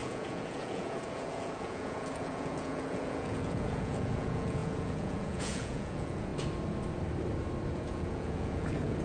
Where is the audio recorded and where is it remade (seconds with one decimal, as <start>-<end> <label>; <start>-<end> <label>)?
0.0-6.3 remade; 6.3-7.7 recorded; 7.7-9.0 remade